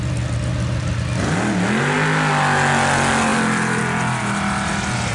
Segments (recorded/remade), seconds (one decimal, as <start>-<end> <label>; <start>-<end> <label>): 0.0-5.1 recorded